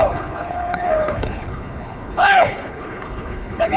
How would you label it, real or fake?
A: fake